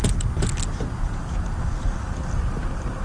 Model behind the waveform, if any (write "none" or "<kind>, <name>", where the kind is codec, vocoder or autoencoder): none